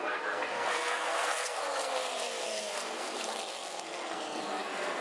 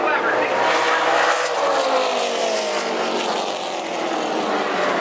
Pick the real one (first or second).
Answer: second